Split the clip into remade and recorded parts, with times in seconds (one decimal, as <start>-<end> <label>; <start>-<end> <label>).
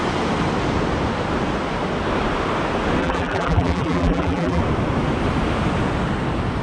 0.0-3.0 recorded; 3.0-4.6 remade; 4.6-6.6 recorded